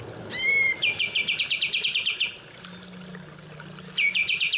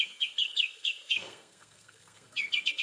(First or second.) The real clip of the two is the first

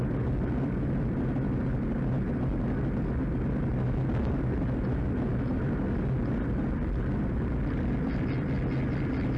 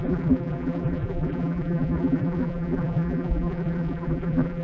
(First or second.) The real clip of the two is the first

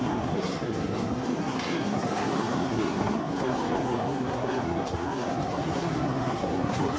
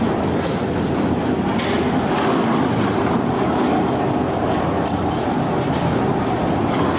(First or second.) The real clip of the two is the second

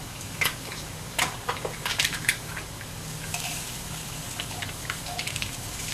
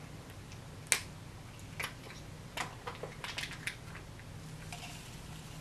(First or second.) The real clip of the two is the second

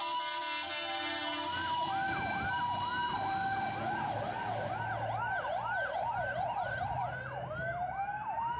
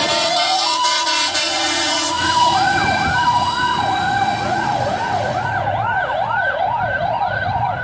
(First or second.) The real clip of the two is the first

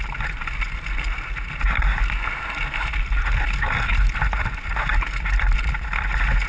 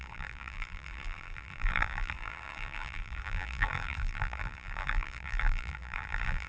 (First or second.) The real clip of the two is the first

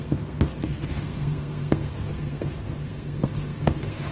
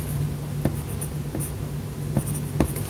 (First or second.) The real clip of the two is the second